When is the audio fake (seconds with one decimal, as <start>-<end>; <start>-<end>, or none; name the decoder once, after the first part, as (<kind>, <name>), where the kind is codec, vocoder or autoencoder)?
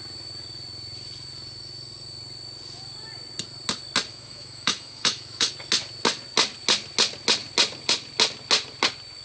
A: 4.1-5.5 (autoencoder, DAC-VAE)